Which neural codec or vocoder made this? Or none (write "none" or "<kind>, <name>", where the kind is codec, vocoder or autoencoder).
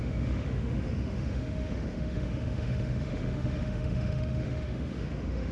autoencoder, DAC-VAE